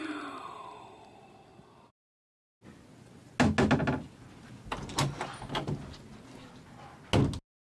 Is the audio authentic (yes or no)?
yes